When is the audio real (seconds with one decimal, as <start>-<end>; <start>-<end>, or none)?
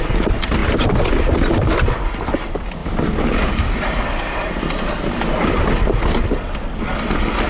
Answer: 0.0-0.6; 1.3-2.8; 5.9-7.5